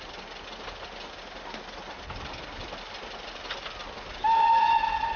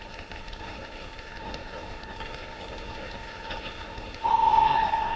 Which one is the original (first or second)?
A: first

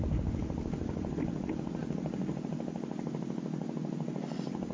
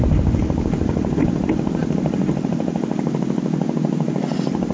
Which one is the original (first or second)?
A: first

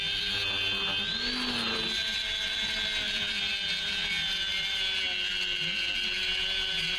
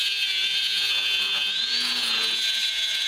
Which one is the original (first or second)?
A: first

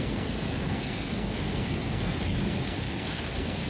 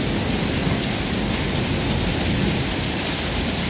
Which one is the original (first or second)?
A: second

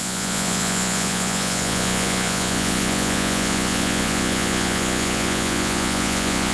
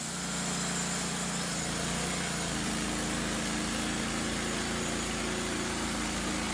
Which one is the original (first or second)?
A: second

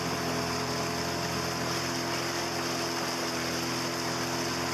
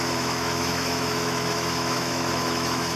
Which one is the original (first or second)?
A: first